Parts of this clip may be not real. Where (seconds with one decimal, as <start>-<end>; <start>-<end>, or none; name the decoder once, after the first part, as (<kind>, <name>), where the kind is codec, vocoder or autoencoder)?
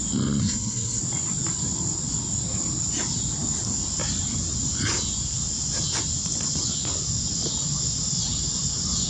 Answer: 0.4-1.0 (codec, SNAC)